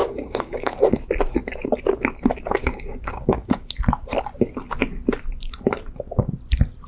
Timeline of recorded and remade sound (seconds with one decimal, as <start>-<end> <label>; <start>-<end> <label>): 0.0-0.8 remade; 0.8-2.6 recorded; 2.6-3.7 remade; 3.7-6.9 recorded